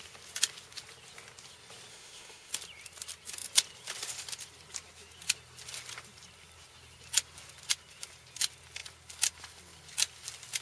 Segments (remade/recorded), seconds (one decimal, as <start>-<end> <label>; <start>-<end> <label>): 0.0-1.9 recorded; 1.9-2.5 remade; 2.5-10.6 recorded